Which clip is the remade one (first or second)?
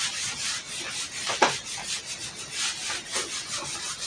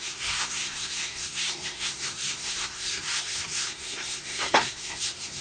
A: second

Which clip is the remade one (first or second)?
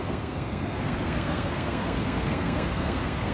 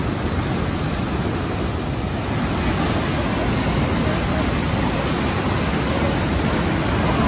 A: first